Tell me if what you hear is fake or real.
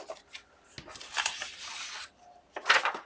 real